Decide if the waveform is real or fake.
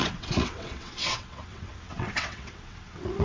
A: fake